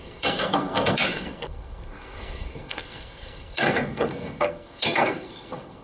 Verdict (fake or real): fake